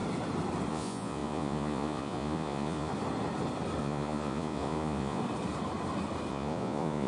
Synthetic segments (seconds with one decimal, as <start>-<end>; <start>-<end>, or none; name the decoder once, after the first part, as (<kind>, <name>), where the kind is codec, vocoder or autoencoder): 0.7-2.9 (vocoder, Vocos); 3.8-5.2; 6.3-7.1

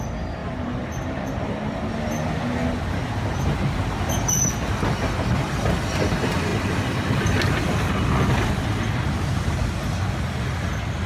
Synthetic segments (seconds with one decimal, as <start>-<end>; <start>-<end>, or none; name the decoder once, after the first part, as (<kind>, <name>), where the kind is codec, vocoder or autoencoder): 0.4-0.9 (vocoder, BigVGAN v2)

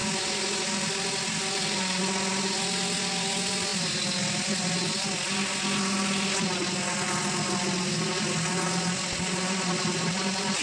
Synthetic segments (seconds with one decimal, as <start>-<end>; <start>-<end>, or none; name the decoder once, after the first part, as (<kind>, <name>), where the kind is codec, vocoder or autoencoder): none

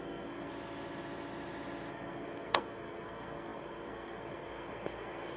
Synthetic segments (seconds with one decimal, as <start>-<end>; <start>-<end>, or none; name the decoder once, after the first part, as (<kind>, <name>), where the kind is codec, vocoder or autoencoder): 0.0-0.5 (codec, SNAC); 1.9-5.4

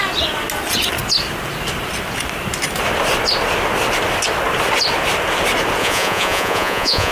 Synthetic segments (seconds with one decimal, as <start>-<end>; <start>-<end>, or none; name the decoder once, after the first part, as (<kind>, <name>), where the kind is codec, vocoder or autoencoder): 5.8-7.1 (vocoder, Vocos)

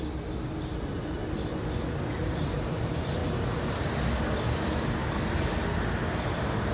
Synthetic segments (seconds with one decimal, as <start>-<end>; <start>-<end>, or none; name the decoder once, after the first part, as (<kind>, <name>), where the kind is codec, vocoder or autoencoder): 0.0-1.2 (vocoder, BigVGAN v2); 2.1-3.2; 4.4-5.0

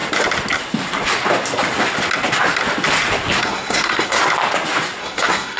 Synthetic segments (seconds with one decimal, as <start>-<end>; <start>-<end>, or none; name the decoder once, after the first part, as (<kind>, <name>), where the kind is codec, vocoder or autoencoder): 3.4-4.2 (codec, SNAC); 5.0-5.6

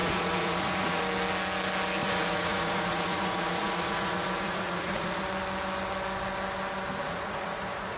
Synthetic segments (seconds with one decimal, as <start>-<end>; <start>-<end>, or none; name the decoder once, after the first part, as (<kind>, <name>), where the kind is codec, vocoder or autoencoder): 0.0-1.0 (vocoder, Vocos); 2.0-5.2; 7.0-8.0